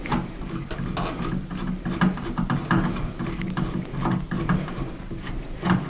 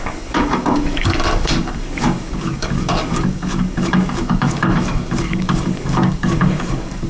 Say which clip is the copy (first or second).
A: second